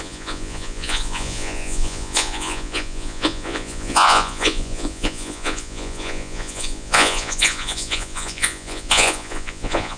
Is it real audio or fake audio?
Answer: fake